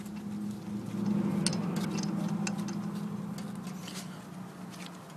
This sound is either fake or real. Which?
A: real